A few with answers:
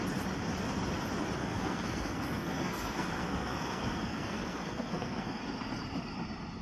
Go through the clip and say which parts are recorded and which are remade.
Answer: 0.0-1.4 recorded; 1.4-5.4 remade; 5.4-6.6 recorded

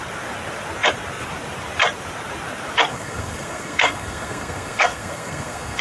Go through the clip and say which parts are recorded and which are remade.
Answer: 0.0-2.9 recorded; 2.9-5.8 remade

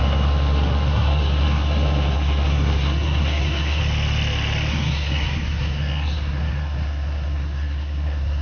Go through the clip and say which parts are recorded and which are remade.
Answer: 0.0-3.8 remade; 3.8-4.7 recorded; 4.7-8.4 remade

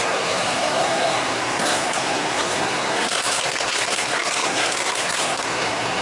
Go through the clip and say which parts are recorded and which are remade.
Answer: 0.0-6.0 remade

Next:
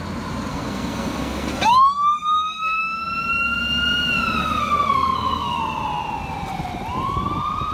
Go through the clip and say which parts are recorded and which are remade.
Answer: 0.0-0.5 recorded; 0.5-2.8 remade; 2.8-4.4 recorded; 4.4-5.6 remade; 5.6-7.7 recorded

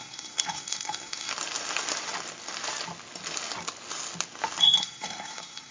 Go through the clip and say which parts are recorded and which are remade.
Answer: 0.0-1.3 remade; 1.3-4.6 recorded; 4.6-5.7 remade